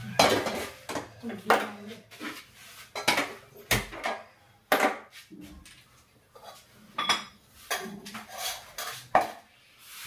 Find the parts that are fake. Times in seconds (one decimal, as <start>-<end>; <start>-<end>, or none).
none